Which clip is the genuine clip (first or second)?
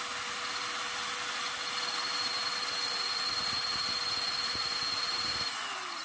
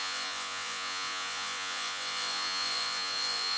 first